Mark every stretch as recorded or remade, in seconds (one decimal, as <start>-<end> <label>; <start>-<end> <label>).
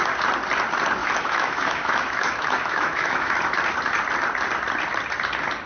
0.0-1.0 recorded; 1.0-3.3 remade; 3.3-5.7 recorded